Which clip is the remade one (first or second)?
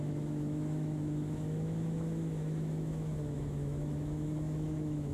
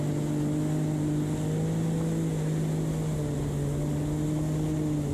first